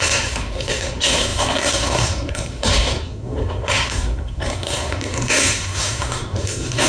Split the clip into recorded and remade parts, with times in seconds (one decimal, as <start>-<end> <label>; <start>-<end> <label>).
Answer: 0.0-6.9 remade